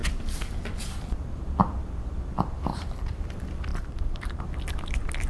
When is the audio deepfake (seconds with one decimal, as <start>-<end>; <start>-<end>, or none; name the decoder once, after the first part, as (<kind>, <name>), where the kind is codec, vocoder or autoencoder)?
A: 2.7-3.2 (vocoder, BigVGAN v2); 3.7-4.4

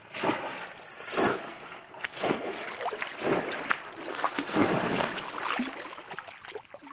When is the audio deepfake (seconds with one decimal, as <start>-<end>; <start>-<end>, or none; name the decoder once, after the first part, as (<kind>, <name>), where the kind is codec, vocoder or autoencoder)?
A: 1.3-2.6 (codec, SNAC); 4.1-5.1

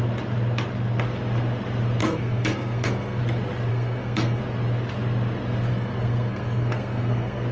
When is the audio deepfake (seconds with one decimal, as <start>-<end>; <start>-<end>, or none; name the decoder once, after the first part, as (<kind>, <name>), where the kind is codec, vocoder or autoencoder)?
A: 2.0-3.2 (codec, SNAC); 3.7-4.4; 5.7-7.5

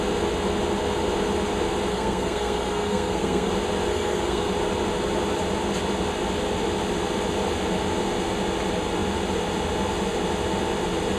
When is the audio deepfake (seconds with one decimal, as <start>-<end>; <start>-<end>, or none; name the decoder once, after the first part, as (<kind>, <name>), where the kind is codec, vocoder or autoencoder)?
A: 1.9-3.5 (codec, SNAC); 3.9-4.5

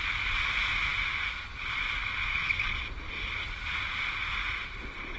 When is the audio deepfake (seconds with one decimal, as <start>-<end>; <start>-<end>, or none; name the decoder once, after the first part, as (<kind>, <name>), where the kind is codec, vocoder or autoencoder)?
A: none

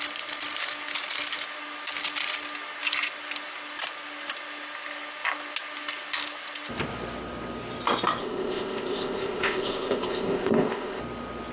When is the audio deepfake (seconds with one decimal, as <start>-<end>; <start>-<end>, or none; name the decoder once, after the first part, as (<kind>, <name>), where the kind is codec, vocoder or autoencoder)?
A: 8.2-11.0 (codec, ZipCodec)

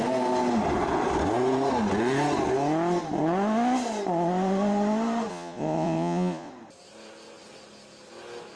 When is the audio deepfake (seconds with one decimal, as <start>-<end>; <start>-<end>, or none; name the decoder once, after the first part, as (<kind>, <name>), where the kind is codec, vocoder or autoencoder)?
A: 5.3-6.5 (vocoder, Vocos)

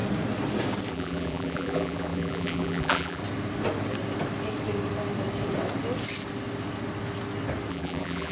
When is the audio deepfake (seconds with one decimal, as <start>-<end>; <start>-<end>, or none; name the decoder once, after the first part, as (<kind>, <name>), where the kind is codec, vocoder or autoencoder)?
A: 0.9-3.2 (vocoder, BigVGAN v2); 7.7-8.3